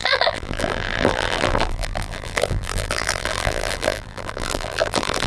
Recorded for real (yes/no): no